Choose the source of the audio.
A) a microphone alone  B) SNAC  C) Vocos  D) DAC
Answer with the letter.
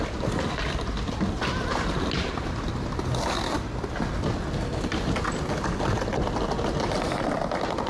A